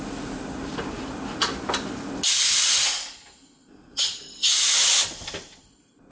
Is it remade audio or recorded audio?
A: recorded